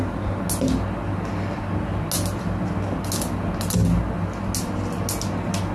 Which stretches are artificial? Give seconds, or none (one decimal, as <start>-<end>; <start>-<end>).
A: none